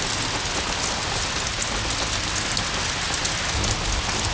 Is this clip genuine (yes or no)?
yes